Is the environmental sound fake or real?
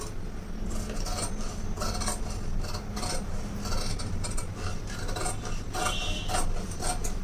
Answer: real